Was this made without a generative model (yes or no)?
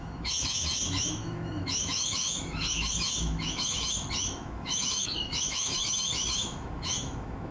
no